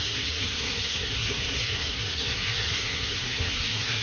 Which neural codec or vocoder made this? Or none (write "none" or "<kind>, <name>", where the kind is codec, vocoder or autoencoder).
codec, SNAC